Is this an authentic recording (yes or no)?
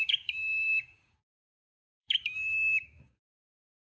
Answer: no